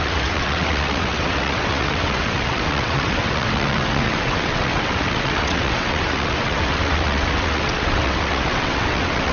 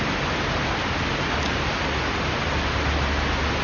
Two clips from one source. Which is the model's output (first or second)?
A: first